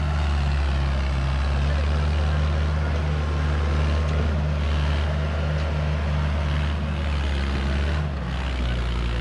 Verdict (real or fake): real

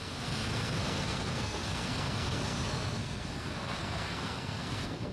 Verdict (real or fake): fake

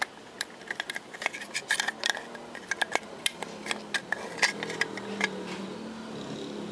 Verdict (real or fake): real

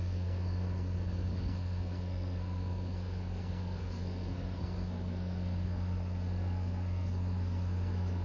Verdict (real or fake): fake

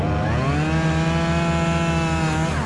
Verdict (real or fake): real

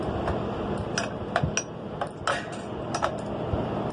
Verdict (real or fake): real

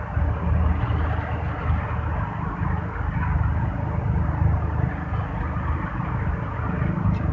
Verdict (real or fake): real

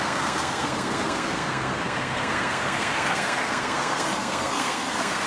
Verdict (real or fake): fake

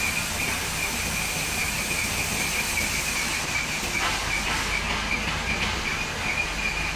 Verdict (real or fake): real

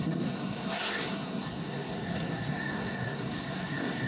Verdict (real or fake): fake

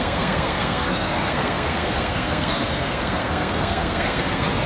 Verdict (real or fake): fake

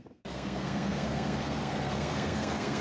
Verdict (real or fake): fake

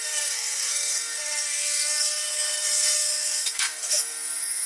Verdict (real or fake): fake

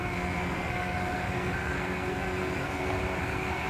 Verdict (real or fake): fake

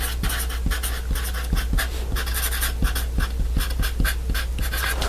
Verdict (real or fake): real